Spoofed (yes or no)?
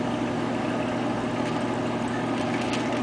no